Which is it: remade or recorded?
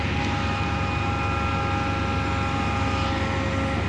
recorded